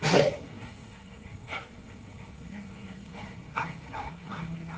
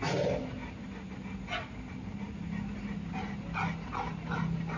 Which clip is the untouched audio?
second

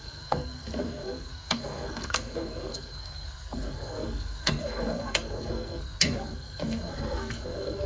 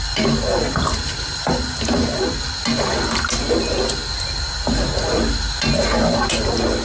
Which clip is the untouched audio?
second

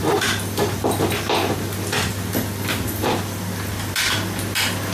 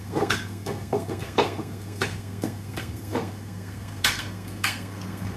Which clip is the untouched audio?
first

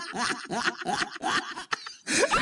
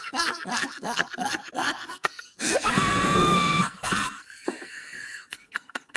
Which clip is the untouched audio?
first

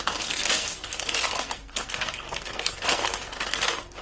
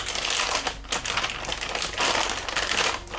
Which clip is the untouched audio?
second